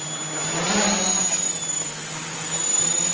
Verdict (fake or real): real